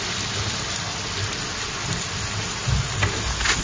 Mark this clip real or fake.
real